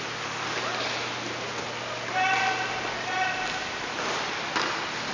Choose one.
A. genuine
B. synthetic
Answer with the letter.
A